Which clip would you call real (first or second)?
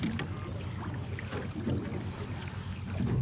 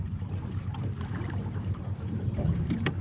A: first